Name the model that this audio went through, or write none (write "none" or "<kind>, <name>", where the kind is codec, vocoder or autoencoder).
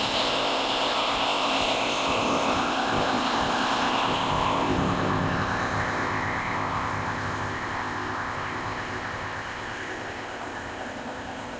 codec, ZipCodec